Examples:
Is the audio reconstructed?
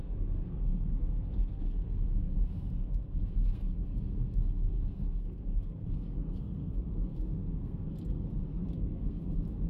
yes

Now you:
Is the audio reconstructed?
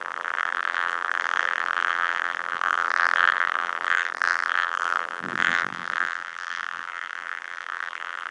yes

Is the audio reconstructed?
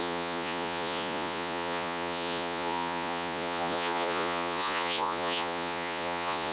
yes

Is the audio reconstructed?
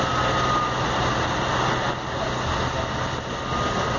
no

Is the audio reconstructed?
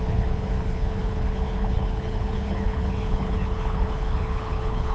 yes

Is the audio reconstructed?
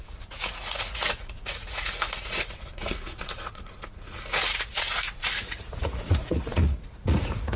yes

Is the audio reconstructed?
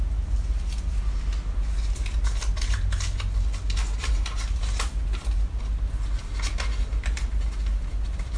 no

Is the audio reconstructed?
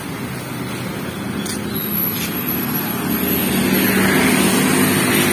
no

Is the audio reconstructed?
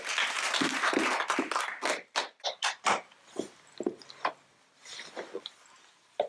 no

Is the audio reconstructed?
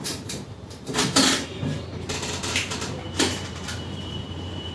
yes